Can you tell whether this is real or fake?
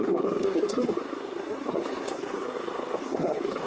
fake